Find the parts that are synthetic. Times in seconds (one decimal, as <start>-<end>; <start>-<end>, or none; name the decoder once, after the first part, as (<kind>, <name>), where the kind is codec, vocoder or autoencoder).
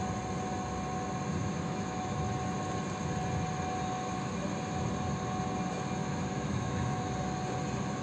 1.4-2.2 (autoencoder, DAC-VAE); 6.0-7.1